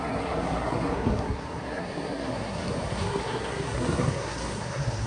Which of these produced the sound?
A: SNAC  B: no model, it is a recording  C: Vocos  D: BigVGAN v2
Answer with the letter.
A